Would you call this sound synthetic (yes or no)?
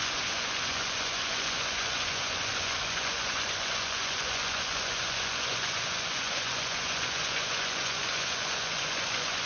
yes